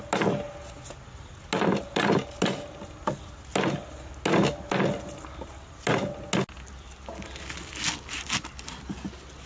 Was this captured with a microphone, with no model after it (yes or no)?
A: yes